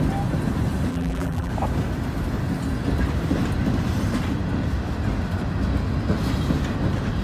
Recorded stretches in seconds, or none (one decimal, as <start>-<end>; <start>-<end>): 0.0-0.9; 1.5-7.2